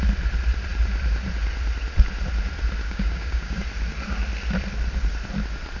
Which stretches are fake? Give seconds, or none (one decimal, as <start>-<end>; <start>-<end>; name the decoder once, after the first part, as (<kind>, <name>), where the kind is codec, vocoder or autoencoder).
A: 2.8-3.6 (codec, DAC)